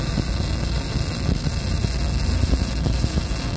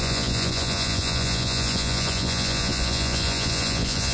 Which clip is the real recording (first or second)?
first